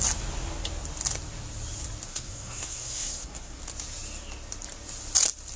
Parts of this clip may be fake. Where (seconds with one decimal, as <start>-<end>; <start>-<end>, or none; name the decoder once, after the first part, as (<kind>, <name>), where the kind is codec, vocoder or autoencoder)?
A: 2.1-3.6 (codec, SNAC)